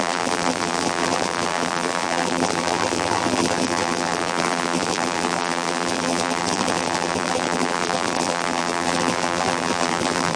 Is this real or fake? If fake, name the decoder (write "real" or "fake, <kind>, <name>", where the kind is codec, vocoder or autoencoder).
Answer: fake, vocoder, BigVGAN v2